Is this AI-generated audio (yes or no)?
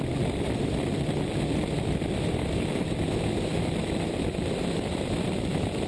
yes